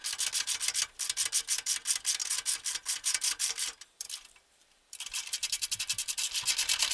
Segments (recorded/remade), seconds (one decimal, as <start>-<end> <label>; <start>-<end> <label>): 0.0-2.2 recorded; 2.2-6.3 remade; 6.3-6.9 recorded